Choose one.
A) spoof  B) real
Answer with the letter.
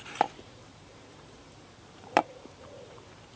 A